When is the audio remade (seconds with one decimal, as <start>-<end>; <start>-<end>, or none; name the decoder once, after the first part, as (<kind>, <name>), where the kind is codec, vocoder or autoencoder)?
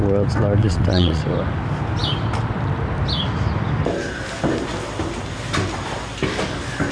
0.6-1.2 (vocoder, WaveNeXt)